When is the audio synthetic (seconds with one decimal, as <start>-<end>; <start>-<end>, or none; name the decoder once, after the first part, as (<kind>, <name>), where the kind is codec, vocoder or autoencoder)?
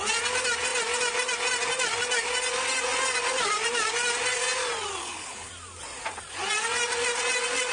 5.0-5.5 (codec, HILCodec)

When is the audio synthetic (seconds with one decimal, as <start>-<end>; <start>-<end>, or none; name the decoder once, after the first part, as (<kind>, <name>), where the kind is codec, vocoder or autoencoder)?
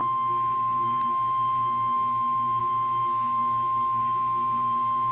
0.0-5.1 (codec, SNAC)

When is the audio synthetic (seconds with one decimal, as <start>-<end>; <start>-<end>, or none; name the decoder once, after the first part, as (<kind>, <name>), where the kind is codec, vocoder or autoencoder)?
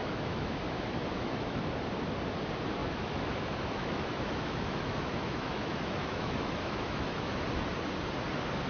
0.0-1.6 (autoencoder, DAC-VAE); 2.8-7.4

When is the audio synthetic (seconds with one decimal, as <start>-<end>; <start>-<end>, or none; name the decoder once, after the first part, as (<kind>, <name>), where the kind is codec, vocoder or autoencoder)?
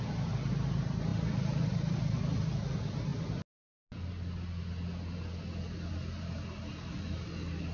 none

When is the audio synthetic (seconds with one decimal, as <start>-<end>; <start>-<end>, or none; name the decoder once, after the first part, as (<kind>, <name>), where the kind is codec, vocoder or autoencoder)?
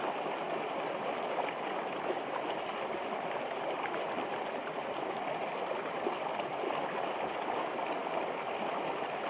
none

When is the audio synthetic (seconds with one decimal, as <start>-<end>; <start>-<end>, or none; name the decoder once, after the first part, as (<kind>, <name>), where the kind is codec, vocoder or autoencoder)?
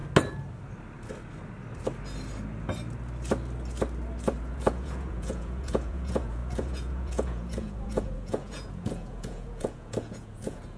4.4-10.8 (vocoder, Vocos)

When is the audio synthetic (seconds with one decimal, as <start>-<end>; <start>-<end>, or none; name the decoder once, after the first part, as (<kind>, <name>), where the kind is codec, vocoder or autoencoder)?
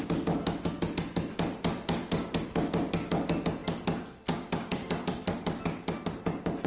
4.7-5.3 (vocoder, BigVGAN v2)